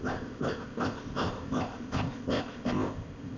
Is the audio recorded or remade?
remade